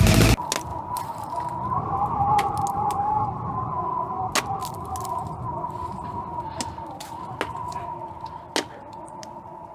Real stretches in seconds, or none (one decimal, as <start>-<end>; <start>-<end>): 0.0-9.7

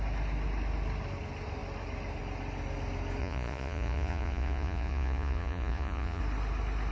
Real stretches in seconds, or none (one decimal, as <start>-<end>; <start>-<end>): 0.0-3.2; 6.2-6.9

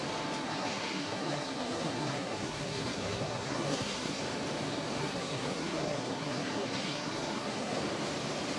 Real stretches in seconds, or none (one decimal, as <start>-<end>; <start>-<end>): 0.0-0.4; 4.2-5.0; 7.8-8.6

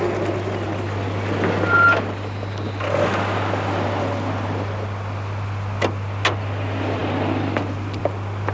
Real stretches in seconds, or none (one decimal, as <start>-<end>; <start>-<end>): 0.0-8.5

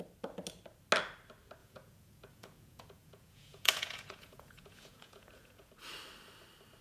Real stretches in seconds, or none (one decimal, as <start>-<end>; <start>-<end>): 0.0-1.6; 5.7-6.8